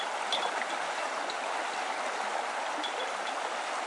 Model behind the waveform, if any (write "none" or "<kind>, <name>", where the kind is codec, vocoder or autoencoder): none